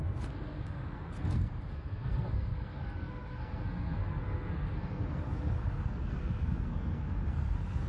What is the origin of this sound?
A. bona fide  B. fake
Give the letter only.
B